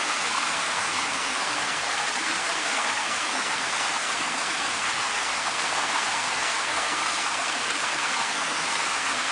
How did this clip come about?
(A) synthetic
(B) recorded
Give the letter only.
A